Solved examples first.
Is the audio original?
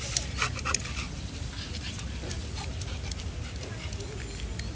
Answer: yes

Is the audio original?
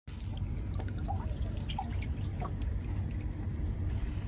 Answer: yes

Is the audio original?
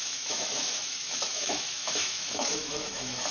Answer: no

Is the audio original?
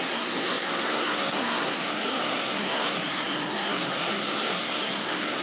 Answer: no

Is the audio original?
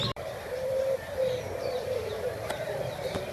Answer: no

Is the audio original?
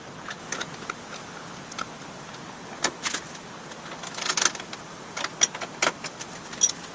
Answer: yes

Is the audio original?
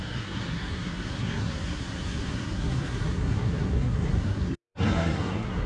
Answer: no